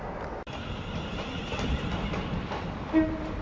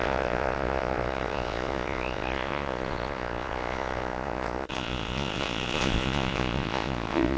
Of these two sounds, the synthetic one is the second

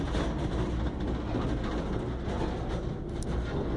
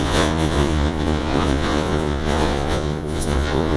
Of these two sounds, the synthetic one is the second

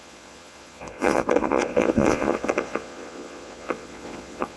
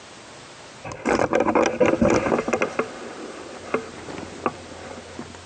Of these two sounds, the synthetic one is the first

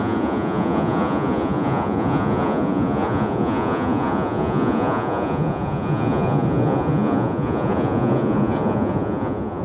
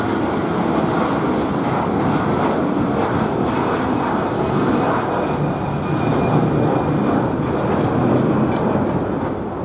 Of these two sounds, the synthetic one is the first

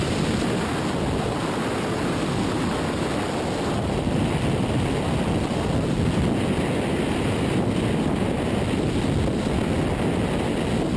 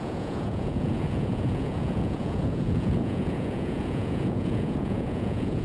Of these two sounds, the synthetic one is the second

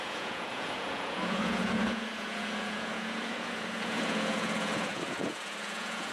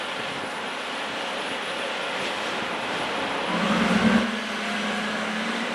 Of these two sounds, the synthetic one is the first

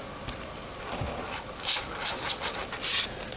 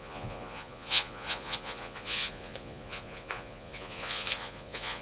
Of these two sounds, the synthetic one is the second